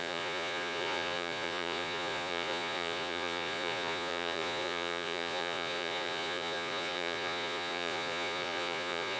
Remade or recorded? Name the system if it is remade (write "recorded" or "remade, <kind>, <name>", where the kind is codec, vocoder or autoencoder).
remade, vocoder, Vocos